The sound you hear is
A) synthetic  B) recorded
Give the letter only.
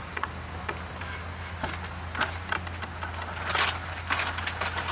B